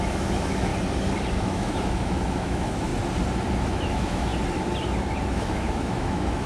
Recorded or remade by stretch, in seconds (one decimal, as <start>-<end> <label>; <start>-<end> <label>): 0.0-0.7 remade; 0.7-1.3 recorded; 1.3-2.9 remade; 2.9-3.5 recorded; 3.5-4.3 remade; 4.3-5.3 recorded; 5.3-6.5 remade